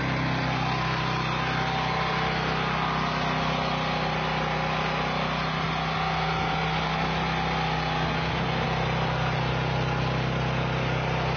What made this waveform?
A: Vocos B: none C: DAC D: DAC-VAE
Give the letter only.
B